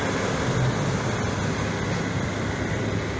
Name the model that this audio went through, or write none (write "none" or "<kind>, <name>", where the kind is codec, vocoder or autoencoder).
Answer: none